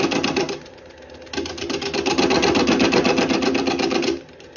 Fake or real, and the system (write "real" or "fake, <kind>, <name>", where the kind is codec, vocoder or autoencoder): real